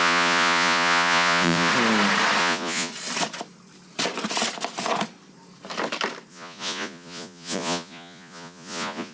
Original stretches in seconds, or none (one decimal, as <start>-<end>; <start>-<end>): 1.7-2.4; 2.9-6.3